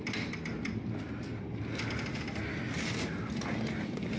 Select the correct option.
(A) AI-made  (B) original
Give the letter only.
B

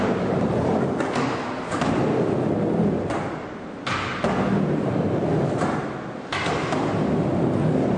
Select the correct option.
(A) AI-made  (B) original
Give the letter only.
B